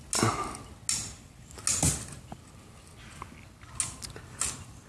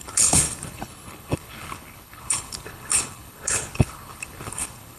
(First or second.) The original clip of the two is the first